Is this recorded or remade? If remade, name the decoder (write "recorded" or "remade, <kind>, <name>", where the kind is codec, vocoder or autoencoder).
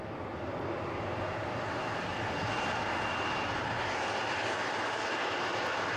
recorded